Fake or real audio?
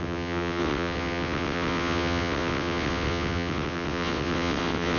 fake